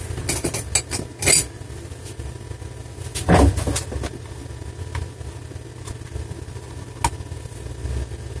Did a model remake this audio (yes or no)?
no